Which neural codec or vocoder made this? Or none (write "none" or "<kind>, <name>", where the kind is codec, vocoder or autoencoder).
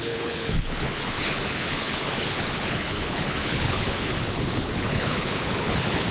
codec, HILCodec